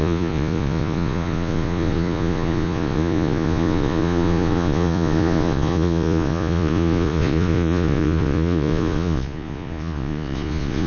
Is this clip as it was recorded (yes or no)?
no